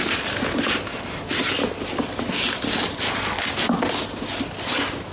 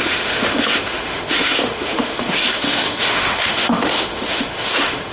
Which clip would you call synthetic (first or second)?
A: second